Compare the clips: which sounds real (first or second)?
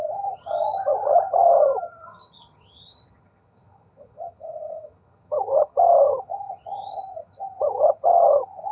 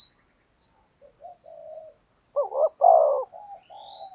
second